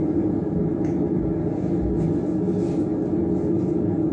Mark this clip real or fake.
real